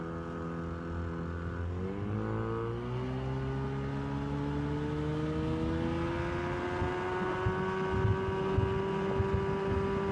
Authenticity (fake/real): real